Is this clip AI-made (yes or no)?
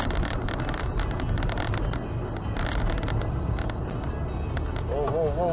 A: no